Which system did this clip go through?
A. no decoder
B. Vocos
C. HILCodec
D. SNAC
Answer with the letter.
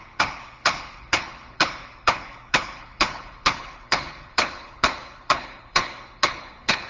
C